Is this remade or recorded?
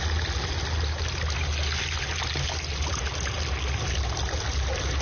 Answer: recorded